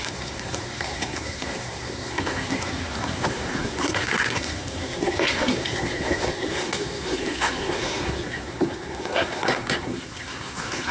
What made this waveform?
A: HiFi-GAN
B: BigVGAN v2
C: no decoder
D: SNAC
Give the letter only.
D